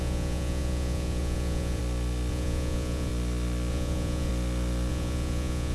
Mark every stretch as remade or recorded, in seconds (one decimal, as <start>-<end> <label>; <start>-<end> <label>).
0.0-1.8 remade; 1.8-2.3 recorded; 2.3-3.1 remade; 3.1-3.7 recorded; 3.7-4.3 remade; 4.3-4.9 recorded; 4.9-5.7 remade